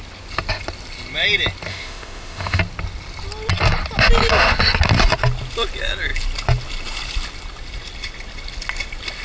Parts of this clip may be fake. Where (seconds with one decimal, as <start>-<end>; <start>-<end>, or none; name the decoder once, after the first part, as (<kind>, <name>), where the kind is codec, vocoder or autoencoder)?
1.7-2.6 (autoencoder, DAC-VAE)